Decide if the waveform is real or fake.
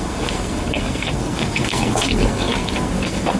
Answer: fake